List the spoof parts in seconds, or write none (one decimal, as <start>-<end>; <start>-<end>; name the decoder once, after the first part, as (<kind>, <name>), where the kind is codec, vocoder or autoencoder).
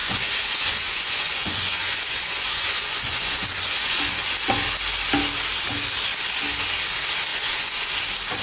0.0-4.0 (vocoder, Vocos); 7.3-7.9